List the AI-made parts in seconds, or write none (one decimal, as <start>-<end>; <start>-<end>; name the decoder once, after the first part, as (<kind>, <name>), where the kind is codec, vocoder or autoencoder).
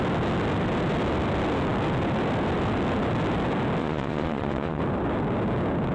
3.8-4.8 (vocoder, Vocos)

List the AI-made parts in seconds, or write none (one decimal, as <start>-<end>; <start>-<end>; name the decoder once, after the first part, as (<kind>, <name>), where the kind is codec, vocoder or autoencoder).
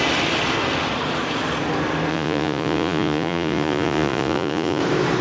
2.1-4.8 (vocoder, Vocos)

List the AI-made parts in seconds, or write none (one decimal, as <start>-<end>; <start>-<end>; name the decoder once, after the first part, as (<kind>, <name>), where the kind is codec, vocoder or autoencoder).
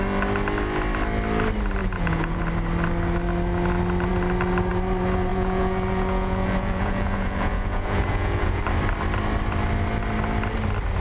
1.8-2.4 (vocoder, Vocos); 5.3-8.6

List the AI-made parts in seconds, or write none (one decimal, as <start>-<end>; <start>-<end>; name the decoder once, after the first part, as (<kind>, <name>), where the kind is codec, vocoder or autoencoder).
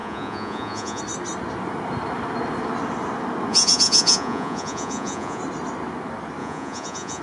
0.0-1.0 (vocoder, Vocos); 3.5-5.4; 6.4-7.2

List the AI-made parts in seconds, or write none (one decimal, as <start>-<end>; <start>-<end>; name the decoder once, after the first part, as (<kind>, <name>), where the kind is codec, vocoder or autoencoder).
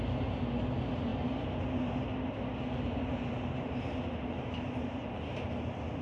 none